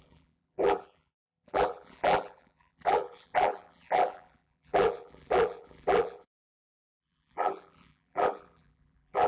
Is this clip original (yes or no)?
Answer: no